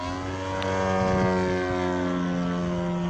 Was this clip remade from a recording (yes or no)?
no